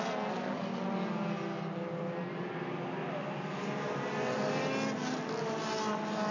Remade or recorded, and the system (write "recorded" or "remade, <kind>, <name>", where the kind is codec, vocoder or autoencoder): recorded